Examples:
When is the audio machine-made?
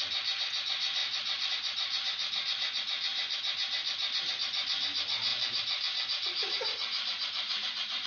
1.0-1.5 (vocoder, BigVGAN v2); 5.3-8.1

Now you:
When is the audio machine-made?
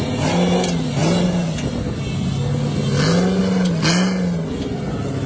none